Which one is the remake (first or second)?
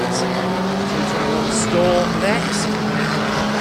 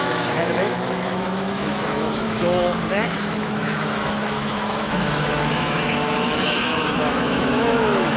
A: second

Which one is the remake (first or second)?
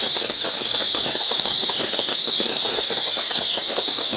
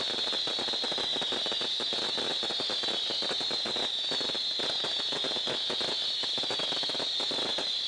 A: first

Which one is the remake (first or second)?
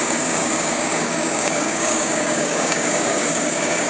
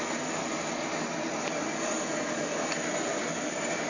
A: first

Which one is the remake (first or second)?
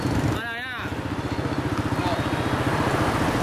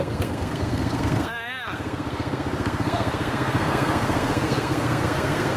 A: second